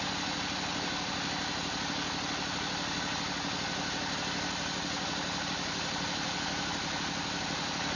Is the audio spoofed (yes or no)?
no